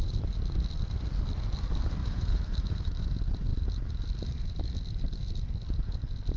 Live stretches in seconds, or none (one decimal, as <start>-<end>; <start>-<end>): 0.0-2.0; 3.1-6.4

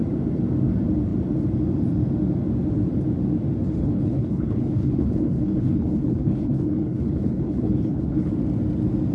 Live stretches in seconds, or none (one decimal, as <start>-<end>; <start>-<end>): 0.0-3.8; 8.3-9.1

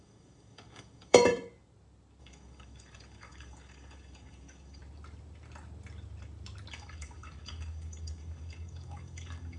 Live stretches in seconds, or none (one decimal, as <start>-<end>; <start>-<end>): 1.3-2.2; 4.8-6.7

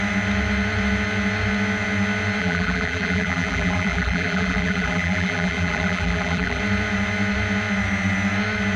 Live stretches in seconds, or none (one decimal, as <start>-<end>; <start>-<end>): 0.0-2.4; 6.6-8.8

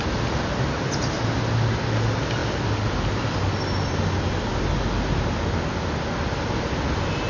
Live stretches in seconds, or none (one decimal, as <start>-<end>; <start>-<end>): 0.0-7.3

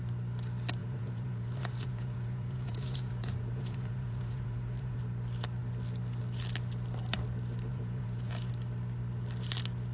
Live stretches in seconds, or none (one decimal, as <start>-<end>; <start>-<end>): 0.0-0.8; 5.0-7.7; 8.5-9.9